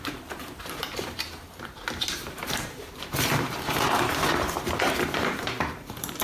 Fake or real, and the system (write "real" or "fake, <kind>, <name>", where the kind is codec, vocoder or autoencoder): fake, vocoder, BigVGAN v2